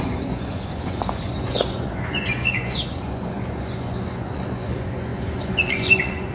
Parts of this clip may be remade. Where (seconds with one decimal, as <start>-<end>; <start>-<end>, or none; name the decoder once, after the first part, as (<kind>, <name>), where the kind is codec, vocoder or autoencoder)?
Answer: 0.0-6.3 (vocoder, Vocos)